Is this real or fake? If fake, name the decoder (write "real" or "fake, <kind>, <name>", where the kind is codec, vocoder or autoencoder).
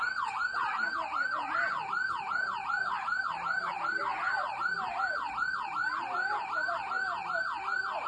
real